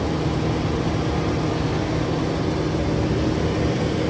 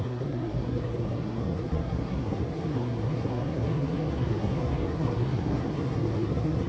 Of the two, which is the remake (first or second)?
second